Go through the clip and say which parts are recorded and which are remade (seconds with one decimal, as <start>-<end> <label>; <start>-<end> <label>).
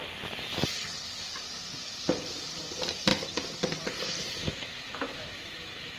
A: 0.0-4.4 recorded; 4.4-6.0 remade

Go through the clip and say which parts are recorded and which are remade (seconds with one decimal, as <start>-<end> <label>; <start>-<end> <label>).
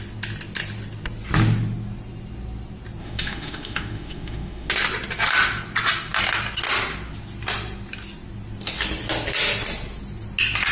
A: 0.0-3.0 recorded; 3.0-4.7 remade; 4.7-10.7 recorded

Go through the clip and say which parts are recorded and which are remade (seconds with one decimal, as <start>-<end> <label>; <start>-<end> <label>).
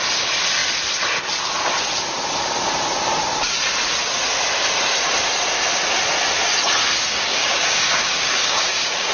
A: 0.0-7.4 recorded; 7.4-9.1 remade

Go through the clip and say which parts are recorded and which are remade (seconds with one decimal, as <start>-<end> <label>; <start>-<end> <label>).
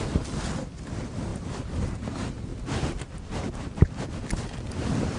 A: 0.0-2.5 recorded; 2.5-3.6 remade; 3.6-5.2 recorded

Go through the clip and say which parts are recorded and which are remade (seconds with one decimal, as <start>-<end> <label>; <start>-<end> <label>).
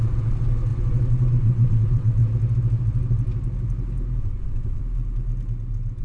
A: 0.0-2.2 remade; 2.2-4.2 recorded; 4.2-4.8 remade; 4.8-6.0 recorded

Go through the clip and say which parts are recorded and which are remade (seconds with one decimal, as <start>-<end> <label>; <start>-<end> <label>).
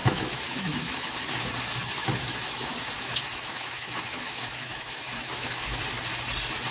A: 0.0-1.5 remade; 1.5-2.0 recorded; 2.0-5.8 remade; 5.8-6.7 recorded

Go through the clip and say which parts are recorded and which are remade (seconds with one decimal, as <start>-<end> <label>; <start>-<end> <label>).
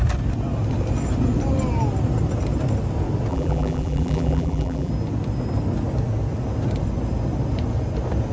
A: 0.0-3.3 recorded; 3.3-4.9 remade; 4.9-8.3 recorded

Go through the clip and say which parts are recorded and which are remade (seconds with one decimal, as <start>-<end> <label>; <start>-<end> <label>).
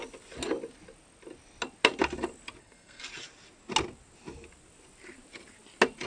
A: 0.0-2.6 recorded; 2.6-3.0 remade; 3.0-6.1 recorded